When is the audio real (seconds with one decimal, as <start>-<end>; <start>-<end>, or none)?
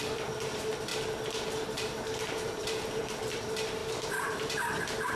0.9-1.6